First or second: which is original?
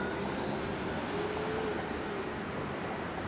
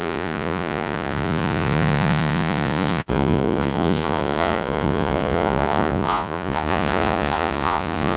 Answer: first